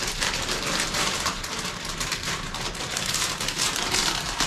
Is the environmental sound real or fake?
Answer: fake